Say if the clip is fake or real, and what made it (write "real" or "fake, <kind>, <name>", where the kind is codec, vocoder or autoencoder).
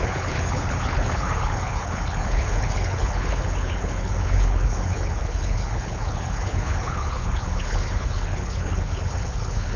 fake, codec, HILCodec